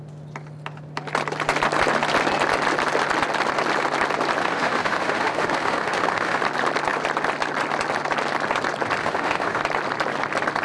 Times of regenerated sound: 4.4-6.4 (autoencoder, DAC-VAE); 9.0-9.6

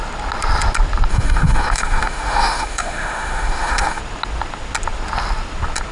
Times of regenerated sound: 1.1-4.0 (autoencoder, DAC-VAE)

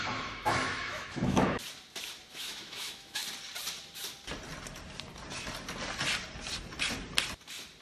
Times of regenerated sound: 0.0-1.6 (autoencoder, DAC-VAE); 2.3-3.2

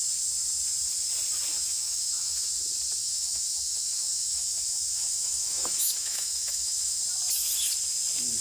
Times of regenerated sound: 1.6-2.5 (autoencoder, DAC-VAE); 3.0-7.0

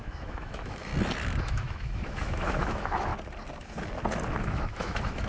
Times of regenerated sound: 0.0-0.9 (autoencoder, DAC-VAE); 1.4-3.1; 4.4-5.3

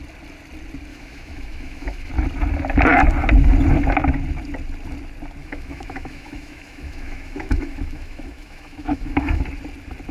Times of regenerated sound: 0.9-2.1 (autoencoder, DAC-VAE); 5.4-9.4

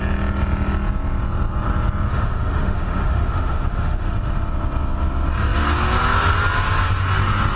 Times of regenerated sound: 2.1-4.1 (autoencoder, DAC-VAE)